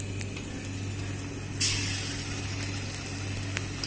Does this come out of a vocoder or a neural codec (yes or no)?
no